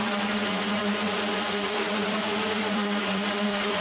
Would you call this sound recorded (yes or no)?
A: no